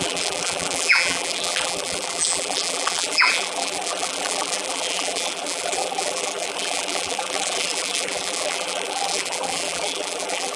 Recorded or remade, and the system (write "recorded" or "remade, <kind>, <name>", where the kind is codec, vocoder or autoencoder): remade, vocoder, BigVGAN v2